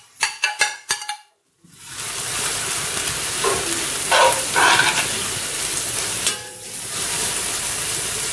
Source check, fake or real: real